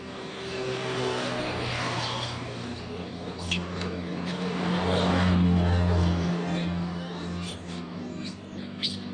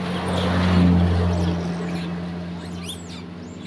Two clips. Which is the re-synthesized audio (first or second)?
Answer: first